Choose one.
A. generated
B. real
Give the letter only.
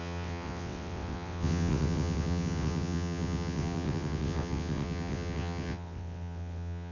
A